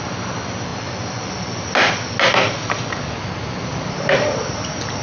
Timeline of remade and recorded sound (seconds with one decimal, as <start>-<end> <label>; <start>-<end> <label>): 0.0-5.0 recorded